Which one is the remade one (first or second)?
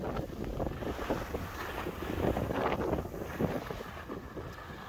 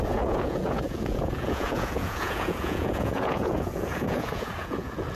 second